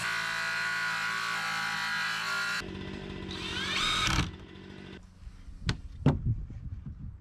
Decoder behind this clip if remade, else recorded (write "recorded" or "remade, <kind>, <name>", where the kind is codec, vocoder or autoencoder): recorded